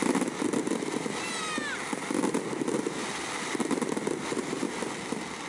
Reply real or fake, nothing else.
real